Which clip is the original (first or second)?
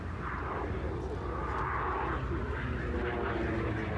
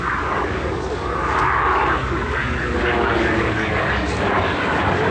first